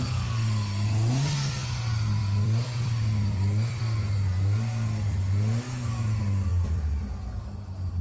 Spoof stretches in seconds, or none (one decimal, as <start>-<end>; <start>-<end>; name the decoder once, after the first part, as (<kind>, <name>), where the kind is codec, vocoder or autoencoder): 2.2-3.8 (vocoder, BigVGAN v2); 6.5-7.2

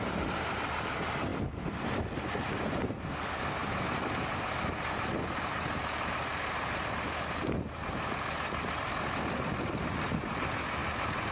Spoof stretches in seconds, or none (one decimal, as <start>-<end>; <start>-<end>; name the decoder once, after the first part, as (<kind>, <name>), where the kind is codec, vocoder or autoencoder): 1.3-2.4 (vocoder, BigVGAN v2); 3.6-4.5; 10.8-11.3

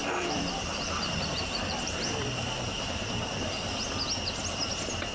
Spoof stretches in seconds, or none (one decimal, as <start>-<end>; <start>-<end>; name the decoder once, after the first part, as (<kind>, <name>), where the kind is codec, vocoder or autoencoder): 0.0-3.1 (vocoder, BigVGAN v2)